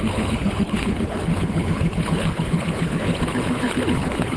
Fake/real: fake